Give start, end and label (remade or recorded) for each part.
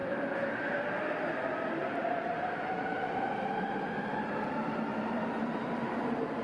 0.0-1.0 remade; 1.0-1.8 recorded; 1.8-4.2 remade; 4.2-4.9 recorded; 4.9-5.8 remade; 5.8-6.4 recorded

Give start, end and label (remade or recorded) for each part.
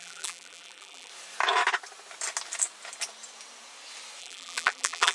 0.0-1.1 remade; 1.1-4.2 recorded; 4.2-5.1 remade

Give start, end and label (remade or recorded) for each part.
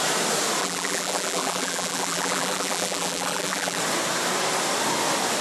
0.0-0.6 recorded; 0.6-3.8 remade; 3.8-5.4 recorded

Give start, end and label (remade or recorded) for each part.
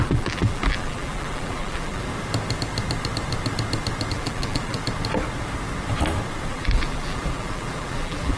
0.0-2.1 remade; 2.1-4.1 recorded; 4.1-4.8 remade; 4.8-6.5 recorded; 6.5-8.4 remade